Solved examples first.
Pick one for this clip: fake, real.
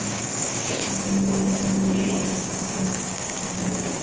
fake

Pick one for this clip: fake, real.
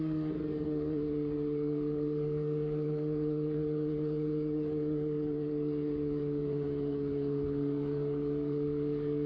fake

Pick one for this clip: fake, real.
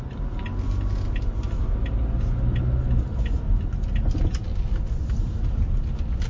real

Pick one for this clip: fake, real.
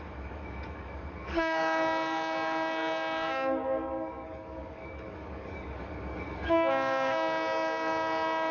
fake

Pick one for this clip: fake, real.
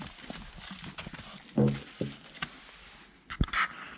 real